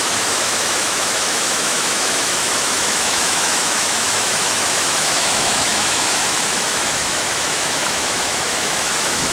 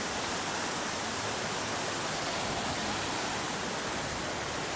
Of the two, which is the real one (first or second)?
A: second